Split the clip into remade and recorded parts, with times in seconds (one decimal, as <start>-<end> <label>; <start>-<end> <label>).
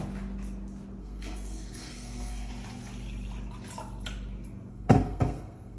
0.0-1.0 recorded; 1.0-2.5 remade; 2.5-4.7 recorded; 4.7-5.8 remade